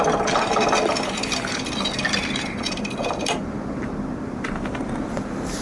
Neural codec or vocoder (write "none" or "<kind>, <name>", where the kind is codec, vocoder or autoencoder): none